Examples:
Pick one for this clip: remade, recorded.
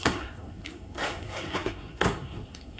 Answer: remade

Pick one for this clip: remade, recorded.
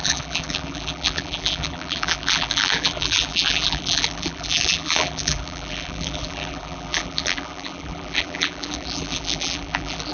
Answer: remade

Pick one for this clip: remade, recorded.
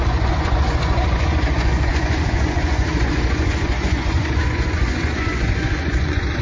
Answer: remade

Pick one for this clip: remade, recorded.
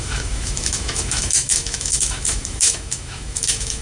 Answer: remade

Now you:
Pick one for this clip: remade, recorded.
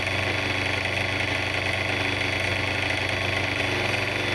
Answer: recorded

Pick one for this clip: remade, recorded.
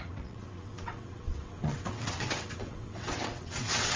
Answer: remade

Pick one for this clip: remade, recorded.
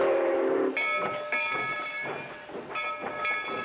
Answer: recorded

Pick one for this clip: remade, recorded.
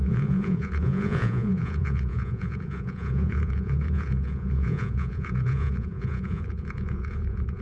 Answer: remade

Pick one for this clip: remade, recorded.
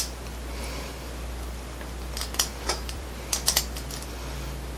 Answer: remade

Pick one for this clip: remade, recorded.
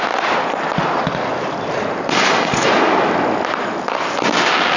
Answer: recorded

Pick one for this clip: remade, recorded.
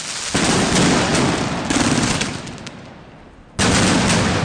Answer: recorded